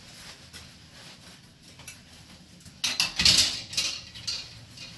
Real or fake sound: real